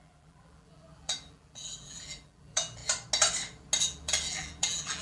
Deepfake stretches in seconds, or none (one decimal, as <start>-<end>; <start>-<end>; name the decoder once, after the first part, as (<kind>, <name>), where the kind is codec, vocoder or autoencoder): 0.0-2.8 (vocoder, BigVGAN v2); 3.8-5.0